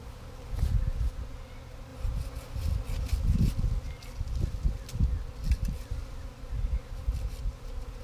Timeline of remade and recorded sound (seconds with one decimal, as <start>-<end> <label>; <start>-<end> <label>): 0.0-5.4 recorded; 5.4-6.8 remade; 6.8-8.0 recorded